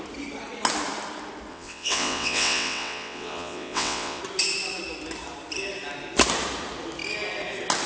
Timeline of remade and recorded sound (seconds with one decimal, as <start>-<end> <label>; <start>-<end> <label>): 0.0-1.5 recorded; 1.5-4.2 remade; 4.2-7.9 recorded